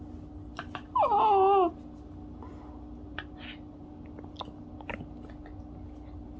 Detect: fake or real real